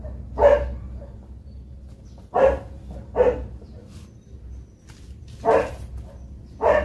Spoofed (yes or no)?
no